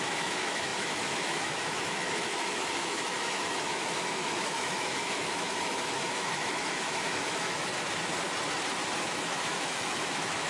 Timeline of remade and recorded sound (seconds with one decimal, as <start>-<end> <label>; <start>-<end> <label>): 0.0-7.7 remade; 7.7-9.0 recorded; 9.0-10.5 remade